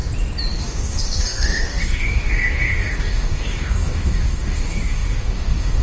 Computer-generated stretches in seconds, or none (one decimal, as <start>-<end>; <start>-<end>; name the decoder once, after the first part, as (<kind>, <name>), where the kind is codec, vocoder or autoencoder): 0.6-5.8 (codec, DAC)